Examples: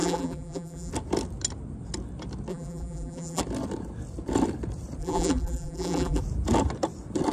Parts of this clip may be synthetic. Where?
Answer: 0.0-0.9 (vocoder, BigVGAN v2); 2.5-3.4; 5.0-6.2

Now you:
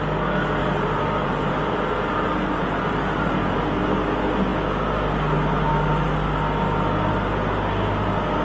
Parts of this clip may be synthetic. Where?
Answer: 0.6-3.6 (vocoder, BigVGAN v2)

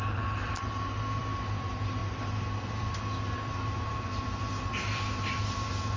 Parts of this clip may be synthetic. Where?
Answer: 0.0-6.0 (vocoder, BigVGAN v2)